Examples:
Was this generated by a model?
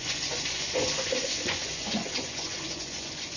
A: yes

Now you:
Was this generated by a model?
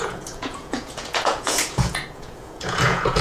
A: yes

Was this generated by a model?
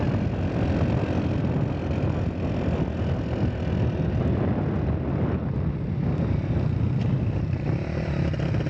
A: no